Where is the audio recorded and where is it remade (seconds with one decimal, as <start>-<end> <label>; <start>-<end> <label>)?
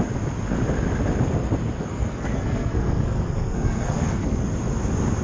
0.0-1.8 recorded; 1.8-4.5 remade; 4.5-5.2 recorded